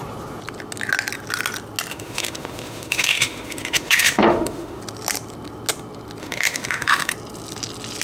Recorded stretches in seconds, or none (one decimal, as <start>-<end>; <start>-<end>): 0.0-1.9; 4.8-6.2; 7.1-8.0